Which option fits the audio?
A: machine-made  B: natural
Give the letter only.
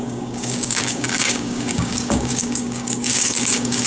A